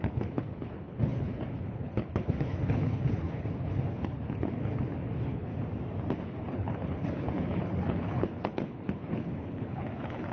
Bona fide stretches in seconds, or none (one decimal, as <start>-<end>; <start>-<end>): 5.5-6.2